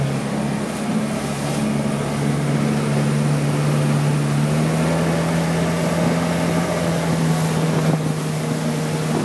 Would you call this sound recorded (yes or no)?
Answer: yes